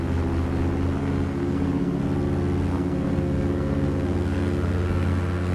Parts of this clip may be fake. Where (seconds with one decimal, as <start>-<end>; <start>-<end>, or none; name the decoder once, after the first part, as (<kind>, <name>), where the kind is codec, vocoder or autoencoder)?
1.0-2.0 (codec, SNAC); 2.7-5.5